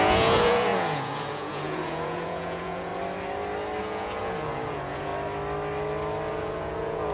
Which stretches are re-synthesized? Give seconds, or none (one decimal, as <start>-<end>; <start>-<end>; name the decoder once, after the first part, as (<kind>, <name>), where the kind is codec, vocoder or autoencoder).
0.0-2.9 (vocoder, Vocos); 3.8-5.1; 6.3-7.1